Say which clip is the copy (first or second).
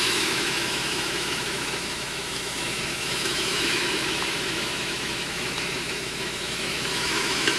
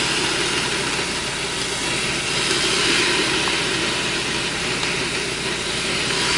first